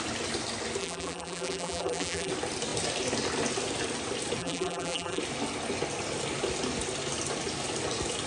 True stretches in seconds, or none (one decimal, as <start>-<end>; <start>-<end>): 0.0-0.8; 2.3-4.4; 5.2-8.3